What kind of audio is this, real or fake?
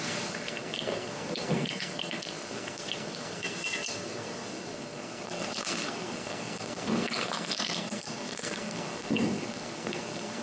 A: fake